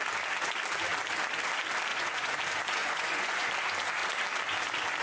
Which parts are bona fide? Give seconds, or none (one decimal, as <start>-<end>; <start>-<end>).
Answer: 0.0-1.9; 2.4-2.8; 3.5-5.0